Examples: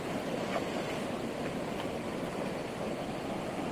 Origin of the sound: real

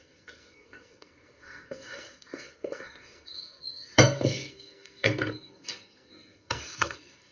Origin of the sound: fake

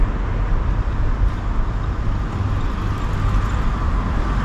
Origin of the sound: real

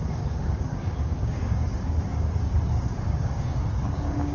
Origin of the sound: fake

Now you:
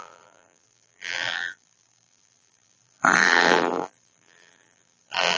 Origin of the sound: fake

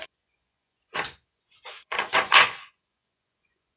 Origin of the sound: fake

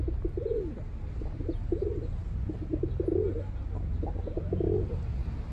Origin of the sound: real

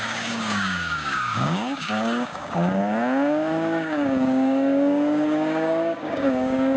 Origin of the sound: fake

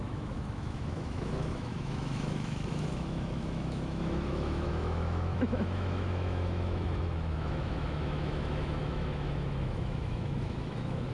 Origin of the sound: fake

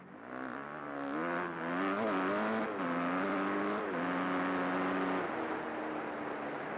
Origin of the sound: real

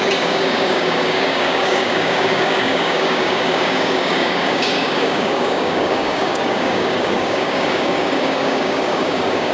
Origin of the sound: fake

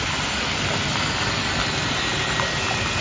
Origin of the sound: real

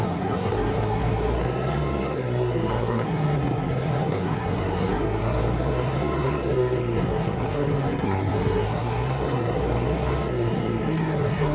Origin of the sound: fake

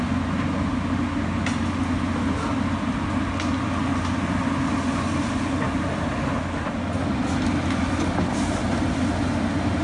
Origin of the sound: real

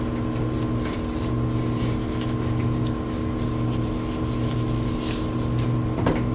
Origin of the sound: real